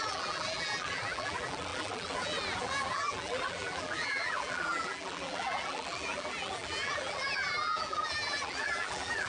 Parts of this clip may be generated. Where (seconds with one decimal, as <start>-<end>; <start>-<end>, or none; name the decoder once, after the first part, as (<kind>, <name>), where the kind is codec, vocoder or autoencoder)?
0.0-9.3 (vocoder, BigVGAN v2)